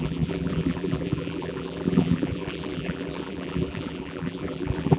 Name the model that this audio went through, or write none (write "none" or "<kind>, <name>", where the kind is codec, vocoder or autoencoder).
vocoder, BigVGAN v2